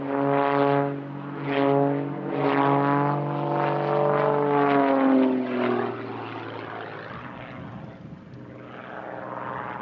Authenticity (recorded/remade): recorded